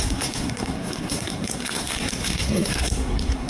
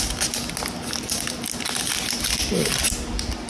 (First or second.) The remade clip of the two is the first